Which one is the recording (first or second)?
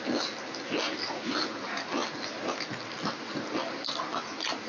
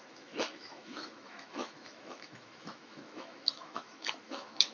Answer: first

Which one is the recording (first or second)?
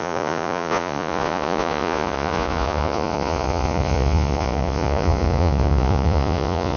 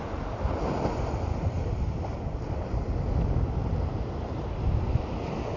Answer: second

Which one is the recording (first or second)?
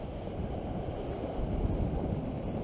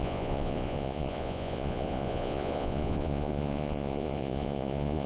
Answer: first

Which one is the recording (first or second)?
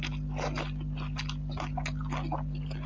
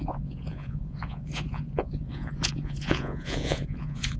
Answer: first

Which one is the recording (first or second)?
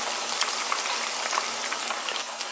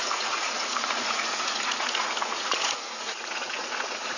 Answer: first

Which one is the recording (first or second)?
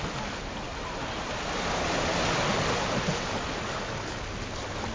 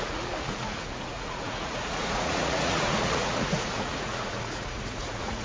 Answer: first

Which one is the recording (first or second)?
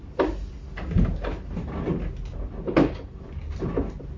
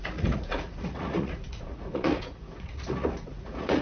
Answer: first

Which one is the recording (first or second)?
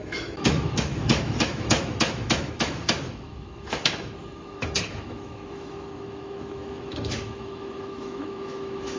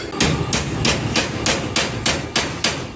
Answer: second